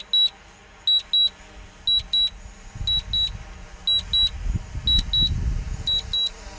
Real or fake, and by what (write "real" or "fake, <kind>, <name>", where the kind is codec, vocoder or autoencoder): real